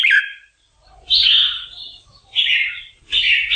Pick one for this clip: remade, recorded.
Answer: remade